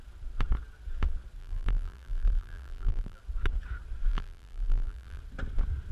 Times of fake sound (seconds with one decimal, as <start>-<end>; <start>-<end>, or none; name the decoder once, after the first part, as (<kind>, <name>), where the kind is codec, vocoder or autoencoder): 1.4-3.2 (vocoder, BigVGAN v2); 4.1-5.2